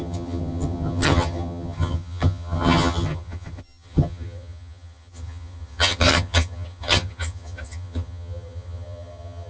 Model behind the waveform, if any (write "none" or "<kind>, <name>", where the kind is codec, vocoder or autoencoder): vocoder, HiFi-GAN